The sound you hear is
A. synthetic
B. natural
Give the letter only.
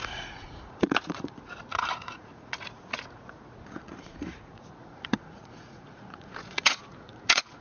A